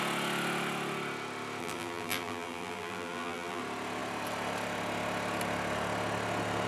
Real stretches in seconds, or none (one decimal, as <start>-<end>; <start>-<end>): 0.0-1.6; 3.6-6.7